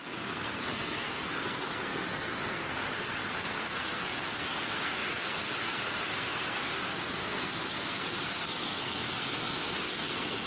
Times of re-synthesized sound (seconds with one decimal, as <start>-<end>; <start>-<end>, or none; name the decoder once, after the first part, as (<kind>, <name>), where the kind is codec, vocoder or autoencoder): 0.0-10.5 (codec, SNAC)